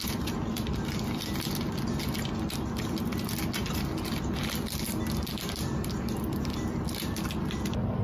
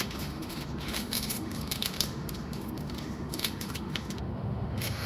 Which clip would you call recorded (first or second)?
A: first